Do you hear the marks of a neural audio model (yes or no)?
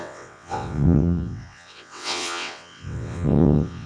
yes